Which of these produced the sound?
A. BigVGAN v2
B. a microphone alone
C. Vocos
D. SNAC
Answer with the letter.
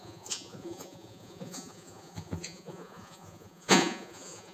C